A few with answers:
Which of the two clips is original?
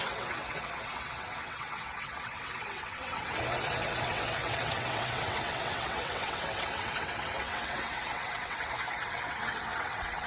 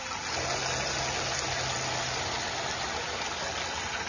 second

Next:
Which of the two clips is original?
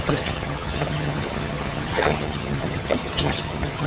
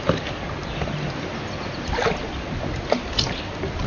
second